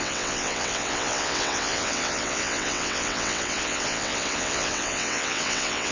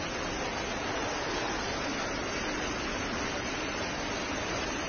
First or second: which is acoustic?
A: second